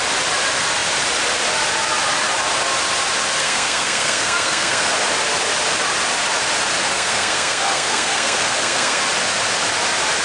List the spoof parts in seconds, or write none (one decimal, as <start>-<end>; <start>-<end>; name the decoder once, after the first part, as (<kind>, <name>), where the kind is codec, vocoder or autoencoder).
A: 3.4-4.9 (codec, SNAC); 6.8-9.0